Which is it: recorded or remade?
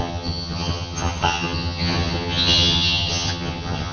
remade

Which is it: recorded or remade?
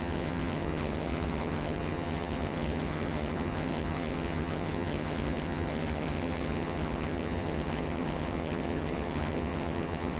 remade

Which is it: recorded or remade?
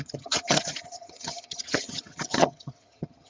remade